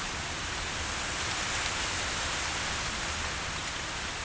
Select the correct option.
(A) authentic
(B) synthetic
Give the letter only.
A